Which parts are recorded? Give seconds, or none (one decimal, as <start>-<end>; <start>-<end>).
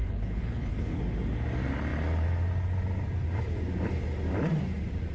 1.0-5.1